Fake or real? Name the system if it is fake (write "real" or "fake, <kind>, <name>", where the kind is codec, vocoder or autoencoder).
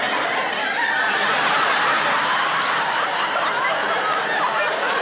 real